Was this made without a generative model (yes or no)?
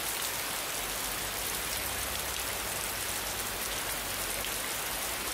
yes